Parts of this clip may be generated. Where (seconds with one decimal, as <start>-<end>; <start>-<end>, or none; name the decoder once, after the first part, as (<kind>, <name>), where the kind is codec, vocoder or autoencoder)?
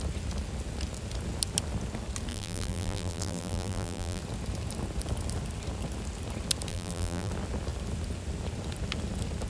2.3-4.2 (vocoder, BigVGAN v2); 6.7-7.3